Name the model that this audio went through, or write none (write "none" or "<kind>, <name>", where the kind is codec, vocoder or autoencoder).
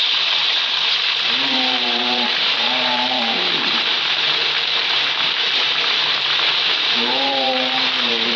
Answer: vocoder, BigVGAN v2